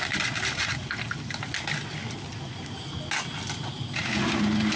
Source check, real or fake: real